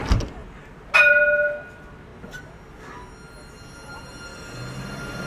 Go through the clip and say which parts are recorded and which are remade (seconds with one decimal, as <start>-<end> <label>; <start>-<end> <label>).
0.0-5.3 recorded